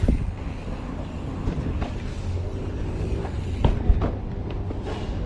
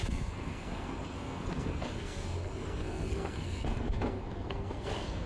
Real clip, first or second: first